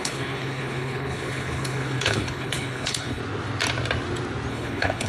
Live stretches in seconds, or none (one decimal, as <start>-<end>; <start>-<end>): 3.2-4.5